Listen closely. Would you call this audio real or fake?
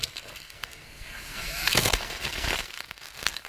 fake